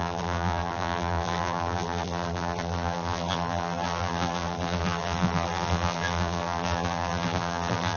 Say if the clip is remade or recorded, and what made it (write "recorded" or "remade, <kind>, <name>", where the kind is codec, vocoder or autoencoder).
remade, vocoder, BigVGAN v2